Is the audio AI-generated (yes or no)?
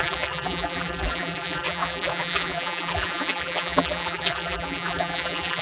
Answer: yes